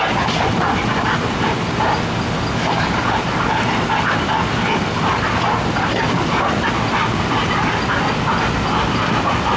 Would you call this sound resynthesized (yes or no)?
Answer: no